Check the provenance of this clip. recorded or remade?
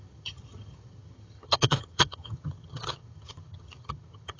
remade